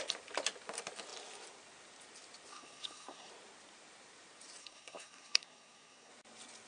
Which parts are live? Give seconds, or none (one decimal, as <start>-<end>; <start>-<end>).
0.0-2.5; 3.3-4.6; 6.1-6.7